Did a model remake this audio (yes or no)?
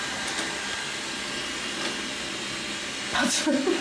no